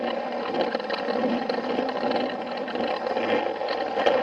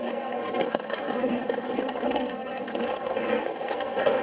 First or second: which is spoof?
second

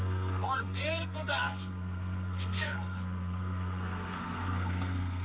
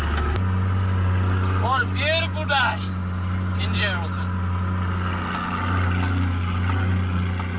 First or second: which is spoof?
first